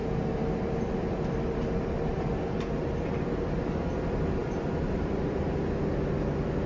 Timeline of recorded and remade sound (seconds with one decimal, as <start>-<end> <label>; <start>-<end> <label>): 0.0-1.7 remade; 1.7-4.4 recorded; 4.4-5.4 remade; 5.4-6.7 recorded